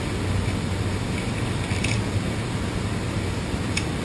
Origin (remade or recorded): recorded